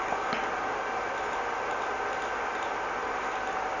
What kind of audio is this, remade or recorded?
recorded